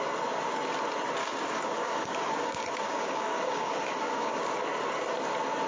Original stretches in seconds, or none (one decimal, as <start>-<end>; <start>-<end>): 0.0-1.2; 4.4-5.7